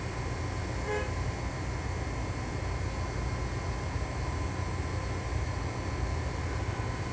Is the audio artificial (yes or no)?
no